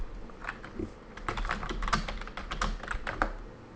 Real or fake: real